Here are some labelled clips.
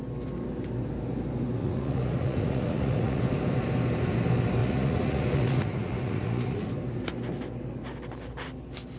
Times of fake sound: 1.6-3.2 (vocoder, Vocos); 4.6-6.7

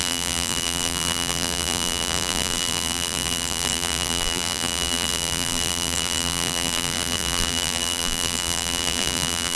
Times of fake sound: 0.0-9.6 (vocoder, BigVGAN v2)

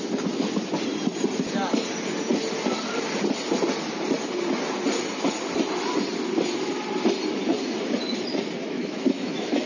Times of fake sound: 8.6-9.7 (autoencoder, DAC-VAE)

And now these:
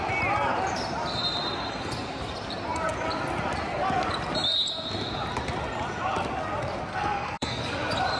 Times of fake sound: 6.9-7.6 (codec, SNAC)